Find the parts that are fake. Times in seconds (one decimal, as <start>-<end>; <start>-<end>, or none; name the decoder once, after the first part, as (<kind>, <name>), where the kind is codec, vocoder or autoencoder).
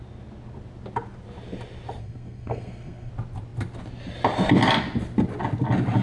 2.0-3.1 (codec, SNAC)